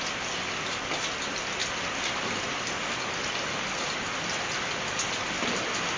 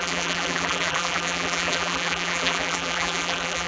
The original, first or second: first